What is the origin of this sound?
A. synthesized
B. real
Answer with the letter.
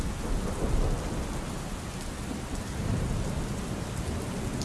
B